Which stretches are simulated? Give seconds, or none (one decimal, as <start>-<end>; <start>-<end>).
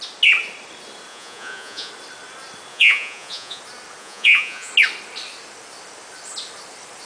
1.1-1.9; 2.7-3.6; 4.0-4.7